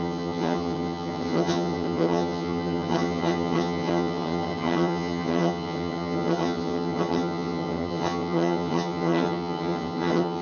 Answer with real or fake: fake